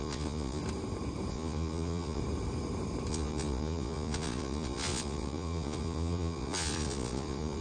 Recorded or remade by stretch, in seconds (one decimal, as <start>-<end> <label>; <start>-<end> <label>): 0.0-0.6 remade; 0.6-1.3 recorded; 1.3-2.2 remade; 2.2-3.1 recorded; 3.1-7.6 remade